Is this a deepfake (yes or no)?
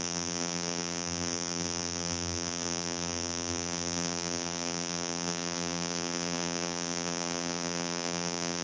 yes